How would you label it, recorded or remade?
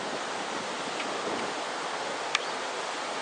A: recorded